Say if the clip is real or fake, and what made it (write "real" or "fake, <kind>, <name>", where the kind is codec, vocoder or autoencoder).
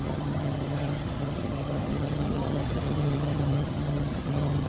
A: fake, vocoder, HiFi-GAN